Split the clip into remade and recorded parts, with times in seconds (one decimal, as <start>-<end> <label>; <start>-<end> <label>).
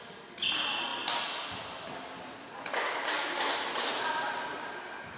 0.0-5.2 recorded